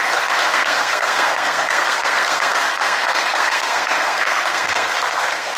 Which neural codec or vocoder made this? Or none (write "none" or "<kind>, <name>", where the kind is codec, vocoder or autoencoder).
codec, SNAC